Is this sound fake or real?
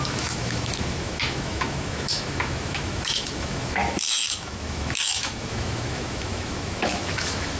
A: fake